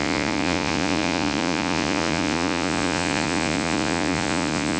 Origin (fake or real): fake